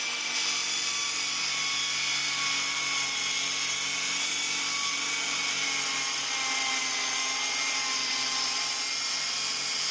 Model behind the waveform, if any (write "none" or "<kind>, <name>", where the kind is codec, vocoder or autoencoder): none